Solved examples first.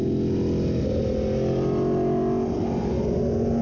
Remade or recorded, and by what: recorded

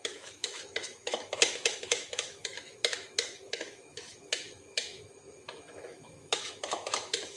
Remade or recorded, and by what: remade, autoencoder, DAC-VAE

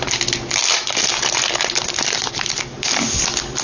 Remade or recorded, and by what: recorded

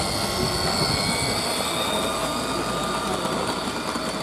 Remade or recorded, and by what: recorded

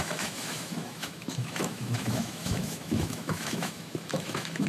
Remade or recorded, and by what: remade, autoencoder, DAC-VAE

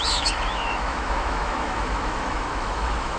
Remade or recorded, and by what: remade, autoencoder, DAC-VAE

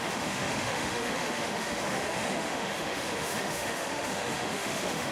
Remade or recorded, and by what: remade, autoencoder, DAC-VAE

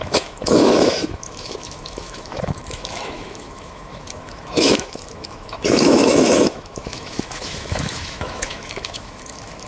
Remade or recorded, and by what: remade, autoencoder, DAC-VAE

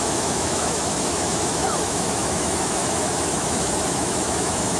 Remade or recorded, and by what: remade, autoencoder, DAC-VAE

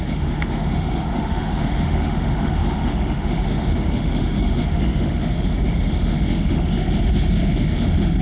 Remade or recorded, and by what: remade, autoencoder, DAC-VAE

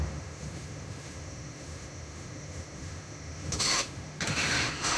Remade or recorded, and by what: remade, autoencoder, DAC-VAE